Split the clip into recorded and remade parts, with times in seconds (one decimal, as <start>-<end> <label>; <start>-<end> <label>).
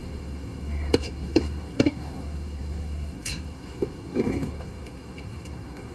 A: 0.0-5.9 remade